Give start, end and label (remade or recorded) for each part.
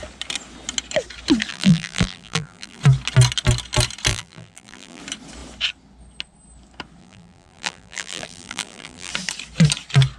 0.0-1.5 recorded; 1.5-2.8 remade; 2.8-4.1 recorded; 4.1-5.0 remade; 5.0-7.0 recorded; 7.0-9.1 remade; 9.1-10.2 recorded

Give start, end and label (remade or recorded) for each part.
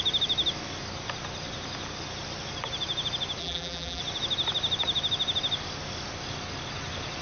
0.0-3.4 recorded; 3.4-4.0 remade; 4.0-7.2 recorded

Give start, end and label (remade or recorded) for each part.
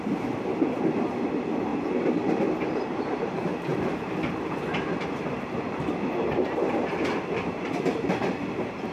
0.0-1.7 remade; 1.7-2.7 recorded; 2.7-8.9 remade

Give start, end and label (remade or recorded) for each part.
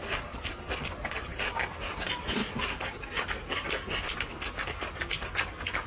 0.0-5.9 recorded